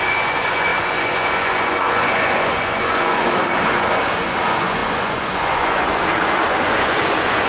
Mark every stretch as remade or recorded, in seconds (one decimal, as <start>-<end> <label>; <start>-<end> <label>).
0.0-7.5 remade